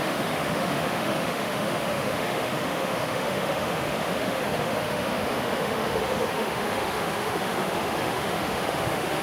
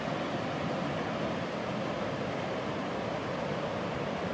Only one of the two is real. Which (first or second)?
second